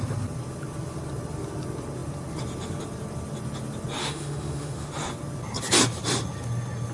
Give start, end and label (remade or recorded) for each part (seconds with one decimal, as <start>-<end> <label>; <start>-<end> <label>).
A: 0.0-4.0 recorded; 4.0-4.9 remade; 4.9-6.9 recorded